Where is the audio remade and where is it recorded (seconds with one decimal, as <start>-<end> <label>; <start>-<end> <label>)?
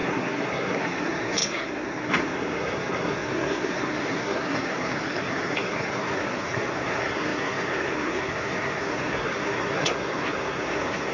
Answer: 0.0-11.1 remade